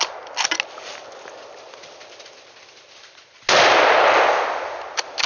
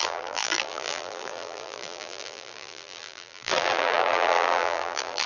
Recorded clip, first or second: first